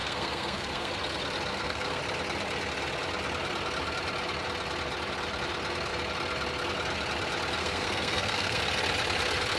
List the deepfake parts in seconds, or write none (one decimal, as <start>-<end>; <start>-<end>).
0.0-0.9; 1.5-2.0; 7.6-8.6